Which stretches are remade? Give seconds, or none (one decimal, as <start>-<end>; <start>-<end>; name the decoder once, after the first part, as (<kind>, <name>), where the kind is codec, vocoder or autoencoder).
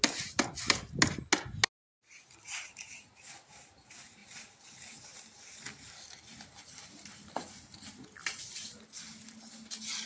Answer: none